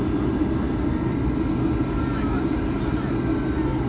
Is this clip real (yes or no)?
yes